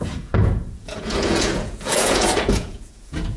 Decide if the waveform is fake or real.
fake